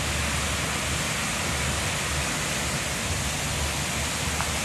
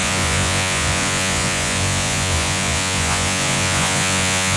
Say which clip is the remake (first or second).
second